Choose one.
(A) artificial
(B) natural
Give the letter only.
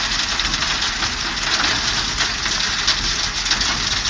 B